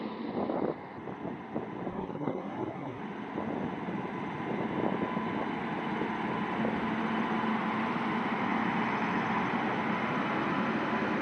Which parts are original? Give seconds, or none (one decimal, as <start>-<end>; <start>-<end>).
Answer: 0.0-1.9; 3.0-11.2